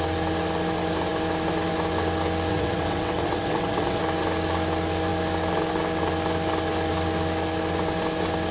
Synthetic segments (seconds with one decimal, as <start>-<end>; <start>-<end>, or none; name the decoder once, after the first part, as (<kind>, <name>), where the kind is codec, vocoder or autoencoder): 2.5-4.0 (vocoder, WaveNeXt)